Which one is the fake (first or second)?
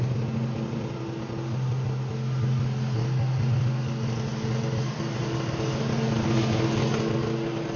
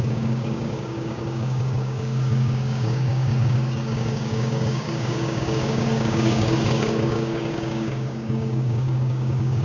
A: second